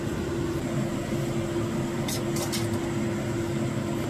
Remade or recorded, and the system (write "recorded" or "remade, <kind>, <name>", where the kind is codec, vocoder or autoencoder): recorded